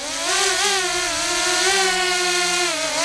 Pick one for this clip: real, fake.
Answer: real